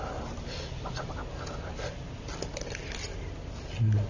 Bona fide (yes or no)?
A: yes